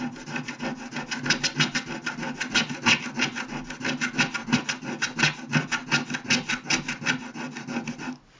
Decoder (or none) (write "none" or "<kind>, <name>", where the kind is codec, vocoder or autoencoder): none